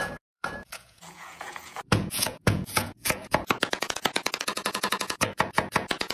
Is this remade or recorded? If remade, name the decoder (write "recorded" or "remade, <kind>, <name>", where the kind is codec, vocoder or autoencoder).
remade, vocoder, Vocos